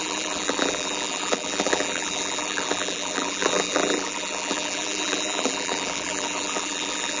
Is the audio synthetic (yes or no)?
yes